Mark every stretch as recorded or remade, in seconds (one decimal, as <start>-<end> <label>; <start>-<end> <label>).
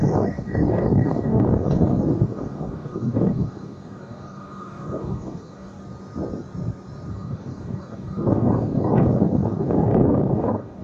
0.0-5.8 remade; 5.8-7.1 recorded; 7.1-10.8 remade